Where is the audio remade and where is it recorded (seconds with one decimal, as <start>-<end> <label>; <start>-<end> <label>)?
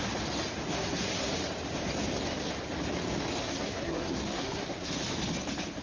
0.0-0.7 recorded; 0.7-1.3 remade; 1.3-3.4 recorded; 3.4-4.9 remade; 4.9-5.8 recorded